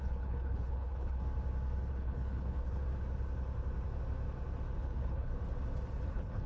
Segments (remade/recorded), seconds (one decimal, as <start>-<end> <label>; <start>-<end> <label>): 0.0-1.2 remade; 1.2-1.9 recorded; 1.9-2.8 remade; 2.8-4.8 recorded; 4.8-5.3 remade; 5.3-6.1 recorded; 6.1-6.5 remade